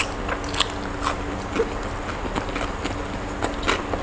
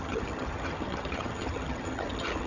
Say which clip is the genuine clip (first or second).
first